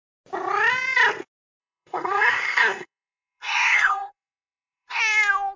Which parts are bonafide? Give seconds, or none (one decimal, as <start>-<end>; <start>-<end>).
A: 0.0-1.6; 5.0-5.6